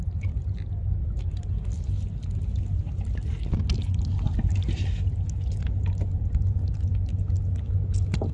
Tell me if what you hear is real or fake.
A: real